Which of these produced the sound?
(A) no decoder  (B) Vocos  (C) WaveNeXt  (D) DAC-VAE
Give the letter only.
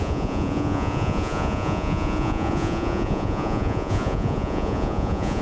B